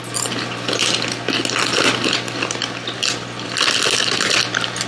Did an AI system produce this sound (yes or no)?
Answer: no